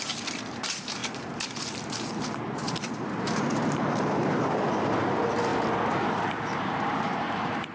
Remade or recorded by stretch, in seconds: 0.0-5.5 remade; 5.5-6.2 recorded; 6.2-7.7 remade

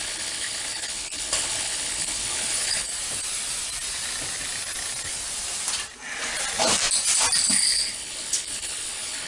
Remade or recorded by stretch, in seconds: 0.0-2.9 remade; 2.9-7.5 recorded; 7.5-9.3 remade

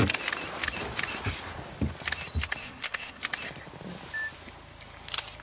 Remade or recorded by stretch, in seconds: 0.0-2.6 recorded; 2.6-3.2 remade; 3.2-5.4 recorded

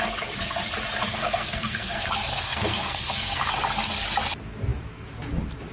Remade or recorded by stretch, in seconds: 0.0-1.1 recorded; 1.1-3.4 remade; 3.4-5.7 recorded